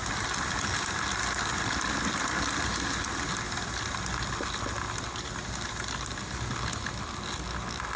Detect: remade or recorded recorded